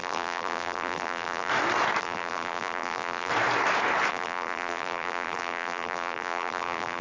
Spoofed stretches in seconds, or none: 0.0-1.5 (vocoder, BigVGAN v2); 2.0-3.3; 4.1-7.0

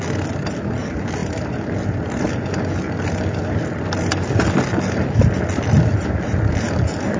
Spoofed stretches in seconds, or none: 0.0-1.2 (vocoder, BigVGAN v2); 4.9-7.2